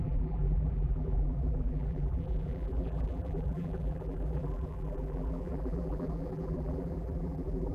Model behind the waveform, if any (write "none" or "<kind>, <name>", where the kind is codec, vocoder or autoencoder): vocoder, BigVGAN v2